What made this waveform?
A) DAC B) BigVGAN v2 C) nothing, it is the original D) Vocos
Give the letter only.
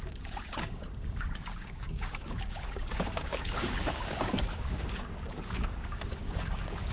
A